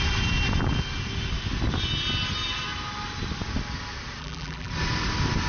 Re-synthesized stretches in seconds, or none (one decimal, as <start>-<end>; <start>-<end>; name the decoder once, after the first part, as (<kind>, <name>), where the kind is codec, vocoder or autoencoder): 4.2-4.7 (vocoder, BigVGAN v2)